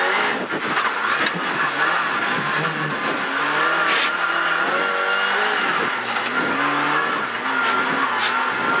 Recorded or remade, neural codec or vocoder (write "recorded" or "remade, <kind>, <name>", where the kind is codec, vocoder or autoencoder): recorded